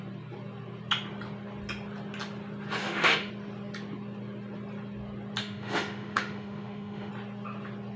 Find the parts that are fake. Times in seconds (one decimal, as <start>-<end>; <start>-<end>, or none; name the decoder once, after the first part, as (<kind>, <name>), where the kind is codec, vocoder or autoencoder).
2.8-3.3 (autoencoder, DAC-VAE); 5.4-7.1